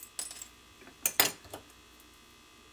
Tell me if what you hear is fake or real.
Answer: real